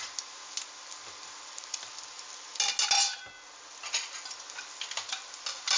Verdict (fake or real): real